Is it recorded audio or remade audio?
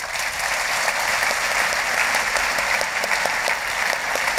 recorded